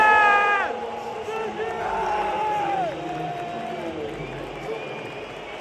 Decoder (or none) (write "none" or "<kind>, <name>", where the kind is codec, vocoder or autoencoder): none